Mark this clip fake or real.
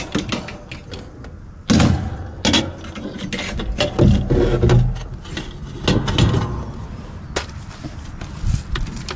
real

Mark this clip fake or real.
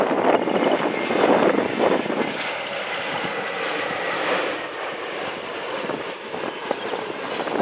real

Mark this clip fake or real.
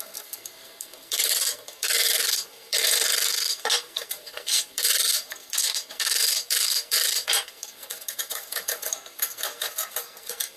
fake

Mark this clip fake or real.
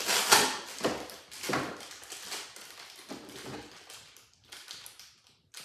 real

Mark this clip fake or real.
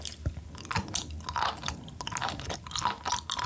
real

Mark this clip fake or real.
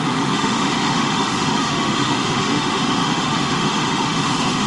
fake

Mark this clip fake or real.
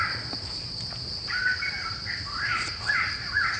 real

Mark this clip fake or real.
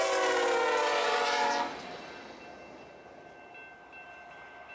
real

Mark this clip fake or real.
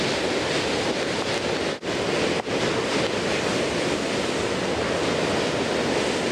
real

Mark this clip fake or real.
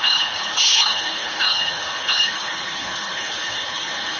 fake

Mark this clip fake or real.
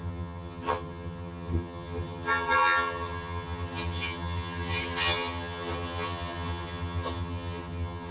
fake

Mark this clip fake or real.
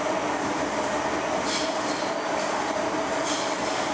real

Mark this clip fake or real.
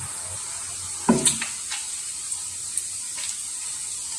real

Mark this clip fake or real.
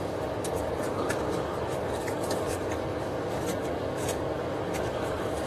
fake